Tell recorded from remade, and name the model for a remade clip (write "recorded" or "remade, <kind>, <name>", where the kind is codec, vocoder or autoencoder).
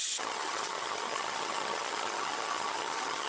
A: remade, vocoder, HiFi-GAN